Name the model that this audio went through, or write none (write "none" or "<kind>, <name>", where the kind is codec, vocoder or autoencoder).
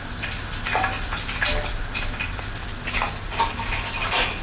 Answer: none